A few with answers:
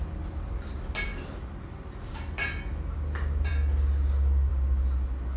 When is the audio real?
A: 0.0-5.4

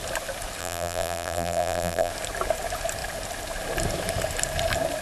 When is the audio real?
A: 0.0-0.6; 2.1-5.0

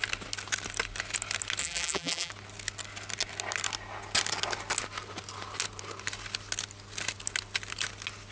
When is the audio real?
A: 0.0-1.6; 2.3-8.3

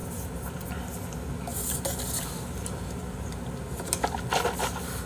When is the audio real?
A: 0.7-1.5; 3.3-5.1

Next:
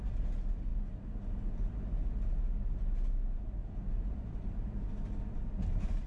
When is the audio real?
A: 0.0-3.6

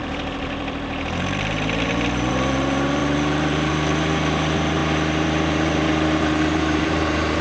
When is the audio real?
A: none